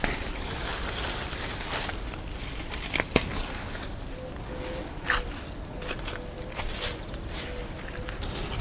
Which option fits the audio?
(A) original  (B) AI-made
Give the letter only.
A